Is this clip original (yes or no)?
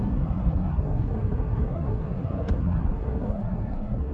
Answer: no